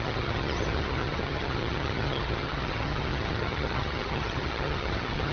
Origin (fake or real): fake